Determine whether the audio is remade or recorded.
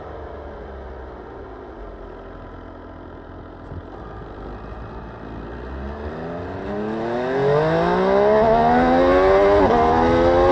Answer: recorded